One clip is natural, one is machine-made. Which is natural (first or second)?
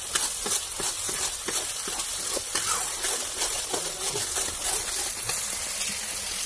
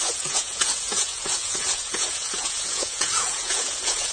first